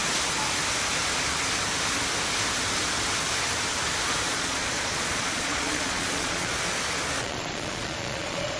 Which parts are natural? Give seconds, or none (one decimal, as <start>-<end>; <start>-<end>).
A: 0.0-4.3; 6.5-7.2